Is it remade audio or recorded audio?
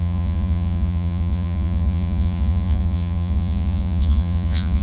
remade